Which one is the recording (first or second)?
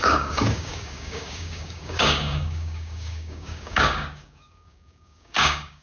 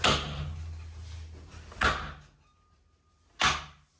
second